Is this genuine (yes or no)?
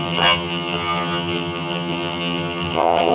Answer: no